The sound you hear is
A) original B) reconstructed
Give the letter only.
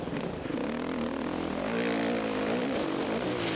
A